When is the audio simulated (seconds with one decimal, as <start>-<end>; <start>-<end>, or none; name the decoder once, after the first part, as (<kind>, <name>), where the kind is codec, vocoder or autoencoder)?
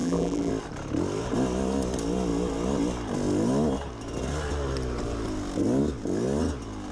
0.0-0.5 (vocoder, BigVGAN v2)